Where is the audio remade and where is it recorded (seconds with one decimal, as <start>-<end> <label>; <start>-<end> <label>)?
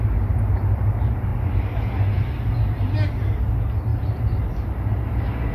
0.0-5.5 recorded